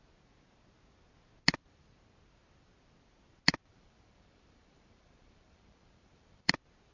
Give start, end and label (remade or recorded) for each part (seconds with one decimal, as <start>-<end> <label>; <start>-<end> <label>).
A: 0.0-3.7 recorded; 3.7-6.5 remade; 6.5-6.9 recorded

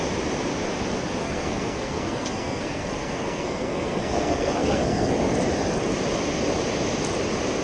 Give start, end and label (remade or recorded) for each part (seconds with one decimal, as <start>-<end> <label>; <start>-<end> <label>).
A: 0.0-1.2 recorded; 1.2-5.1 remade; 5.1-7.6 recorded

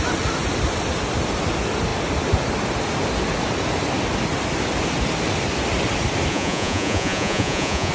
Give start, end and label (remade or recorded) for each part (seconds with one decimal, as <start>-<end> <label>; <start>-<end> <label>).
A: 0.0-6.3 recorded; 6.3-7.9 remade

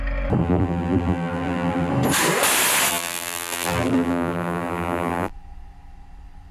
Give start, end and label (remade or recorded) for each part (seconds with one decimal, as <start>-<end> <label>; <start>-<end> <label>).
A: 0.0-0.4 recorded; 0.4-1.9 remade; 1.9-2.9 recorded; 2.9-5.3 remade; 5.3-6.5 recorded

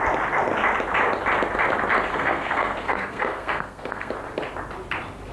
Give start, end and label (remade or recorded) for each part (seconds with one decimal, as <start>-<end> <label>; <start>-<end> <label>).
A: 0.0-2.1 recorded; 2.1-4.1 remade; 4.1-5.3 recorded

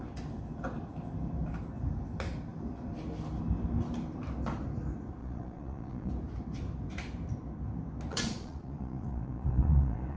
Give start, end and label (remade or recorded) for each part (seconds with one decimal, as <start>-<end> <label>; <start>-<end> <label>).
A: 0.0-5.2 recorded; 5.2-6.1 remade; 6.1-8.1 recorded; 8.1-10.2 remade

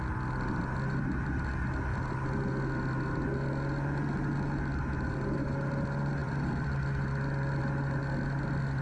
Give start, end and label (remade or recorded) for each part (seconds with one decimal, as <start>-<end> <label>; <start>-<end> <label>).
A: 0.0-1.9 recorded; 1.9-2.5 remade; 2.5-6.2 recorded; 6.2-7.6 remade; 7.6-8.8 recorded